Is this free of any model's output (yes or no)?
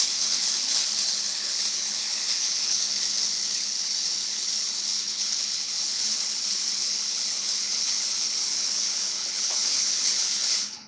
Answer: no